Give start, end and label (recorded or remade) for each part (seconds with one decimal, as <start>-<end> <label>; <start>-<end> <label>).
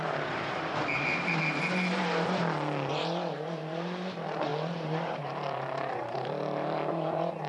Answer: 0.0-7.5 remade